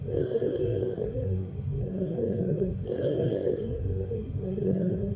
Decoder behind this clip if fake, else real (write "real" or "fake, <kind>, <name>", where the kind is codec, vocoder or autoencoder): fake, codec, SNAC